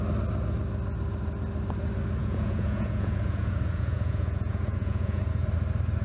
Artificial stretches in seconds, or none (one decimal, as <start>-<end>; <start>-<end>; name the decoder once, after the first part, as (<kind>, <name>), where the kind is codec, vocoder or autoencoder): 2.2-5.2 (vocoder, Vocos)